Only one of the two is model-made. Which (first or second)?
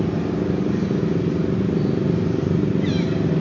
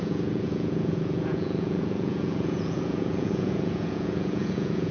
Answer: second